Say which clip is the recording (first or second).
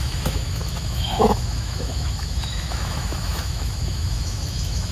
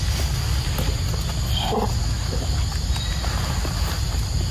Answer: second